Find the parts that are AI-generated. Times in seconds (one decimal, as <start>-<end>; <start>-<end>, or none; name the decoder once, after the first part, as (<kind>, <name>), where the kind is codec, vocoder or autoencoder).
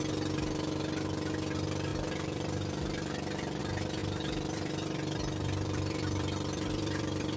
1.9-3.6 (vocoder, BigVGAN v2); 4.0-7.4